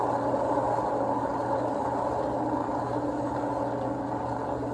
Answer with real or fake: real